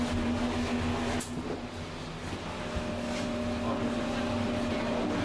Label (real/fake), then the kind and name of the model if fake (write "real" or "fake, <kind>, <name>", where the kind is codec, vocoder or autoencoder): real